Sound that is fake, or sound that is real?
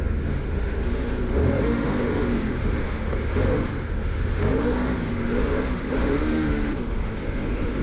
fake